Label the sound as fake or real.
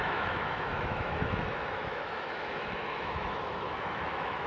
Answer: fake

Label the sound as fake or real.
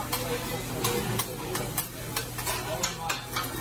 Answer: real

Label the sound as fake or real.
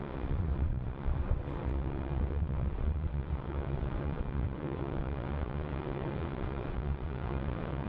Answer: fake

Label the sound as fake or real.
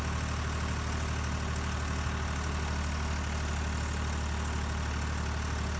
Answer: real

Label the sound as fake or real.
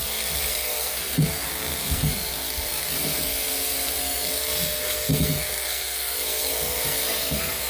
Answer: fake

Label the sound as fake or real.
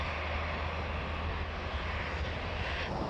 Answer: real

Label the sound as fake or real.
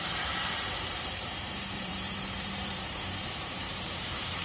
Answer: fake